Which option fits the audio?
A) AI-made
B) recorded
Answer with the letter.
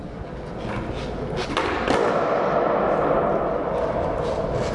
B